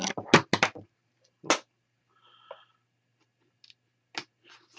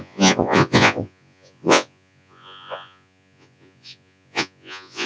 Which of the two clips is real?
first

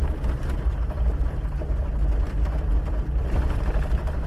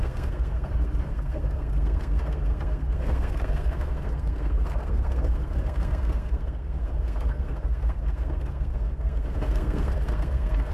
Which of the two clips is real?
first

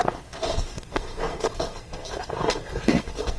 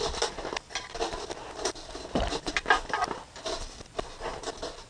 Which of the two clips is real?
second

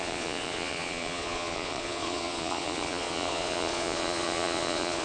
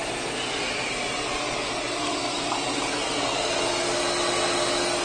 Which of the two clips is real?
second